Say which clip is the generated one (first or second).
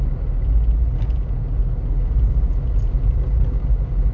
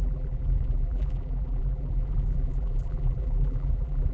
second